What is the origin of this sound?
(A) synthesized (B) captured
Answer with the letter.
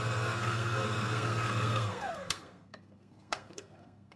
A